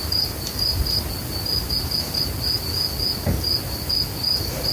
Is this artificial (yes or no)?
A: no